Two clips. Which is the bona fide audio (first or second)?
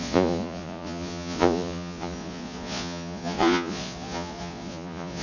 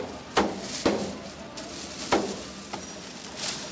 second